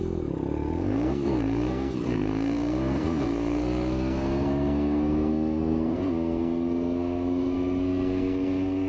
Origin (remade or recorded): remade